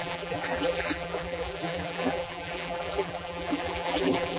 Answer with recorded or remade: remade